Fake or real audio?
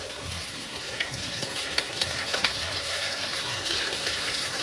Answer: fake